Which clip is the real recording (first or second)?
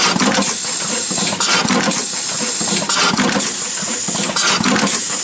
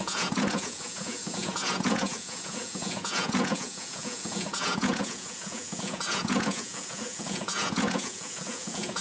first